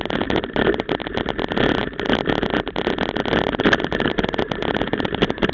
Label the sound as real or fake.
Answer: real